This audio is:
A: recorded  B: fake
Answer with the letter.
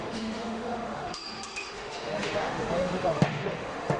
B